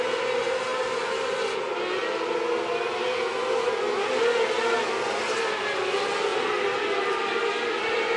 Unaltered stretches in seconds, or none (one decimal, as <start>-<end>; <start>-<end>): 0.0-8.2